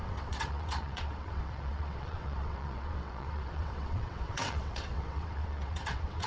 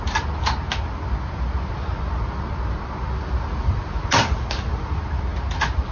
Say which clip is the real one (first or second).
second